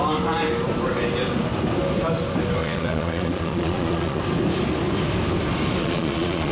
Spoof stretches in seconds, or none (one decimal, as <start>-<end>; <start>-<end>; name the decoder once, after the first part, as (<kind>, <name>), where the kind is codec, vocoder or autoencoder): 2.6-4.2 (vocoder, Vocos); 5.8-6.5